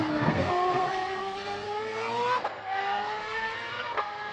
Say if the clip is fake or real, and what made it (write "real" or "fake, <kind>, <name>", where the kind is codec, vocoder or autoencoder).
fake, codec, SNAC